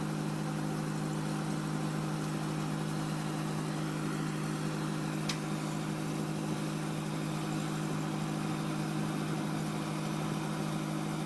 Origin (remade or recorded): recorded